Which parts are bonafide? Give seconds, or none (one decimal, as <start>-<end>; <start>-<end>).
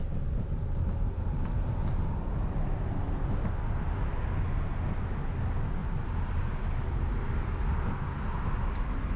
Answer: 0.0-5.8; 6.3-9.2